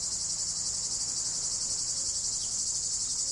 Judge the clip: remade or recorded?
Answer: recorded